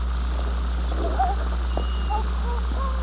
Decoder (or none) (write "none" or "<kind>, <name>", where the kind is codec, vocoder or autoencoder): none